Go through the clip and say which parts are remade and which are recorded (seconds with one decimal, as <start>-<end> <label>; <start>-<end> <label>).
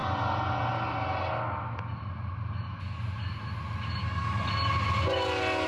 0.0-4.0 recorded; 4.0-4.5 remade; 4.5-5.7 recorded